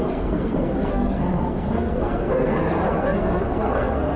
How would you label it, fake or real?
fake